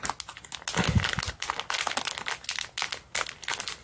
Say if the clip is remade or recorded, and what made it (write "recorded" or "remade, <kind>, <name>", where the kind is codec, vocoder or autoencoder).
recorded